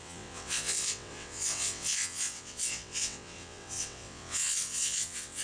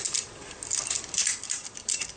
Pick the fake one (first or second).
first